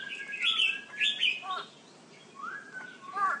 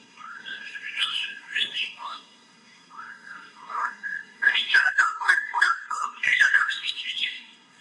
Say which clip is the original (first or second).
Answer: first